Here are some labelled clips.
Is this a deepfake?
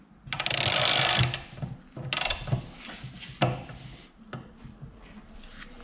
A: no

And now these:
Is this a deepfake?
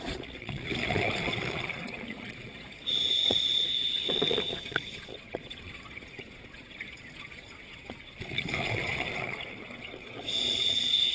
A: yes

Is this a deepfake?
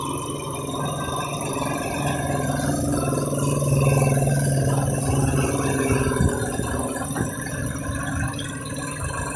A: no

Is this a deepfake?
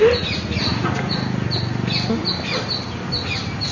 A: no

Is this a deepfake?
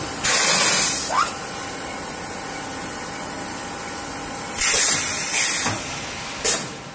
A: no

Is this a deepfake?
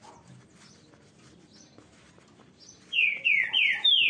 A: no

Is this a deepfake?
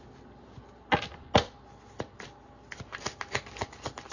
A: no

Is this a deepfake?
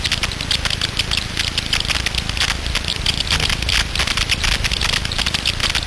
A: no